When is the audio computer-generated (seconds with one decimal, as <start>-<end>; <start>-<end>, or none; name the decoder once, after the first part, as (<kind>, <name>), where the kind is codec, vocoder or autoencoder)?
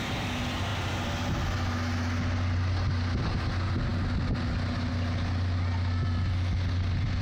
none